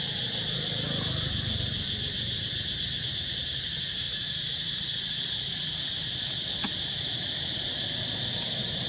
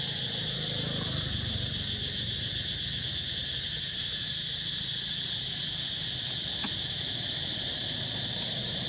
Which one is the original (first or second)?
second